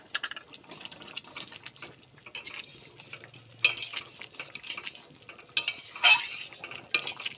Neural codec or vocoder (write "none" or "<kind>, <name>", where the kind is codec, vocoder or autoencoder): none